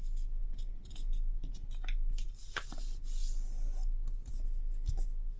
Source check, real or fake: real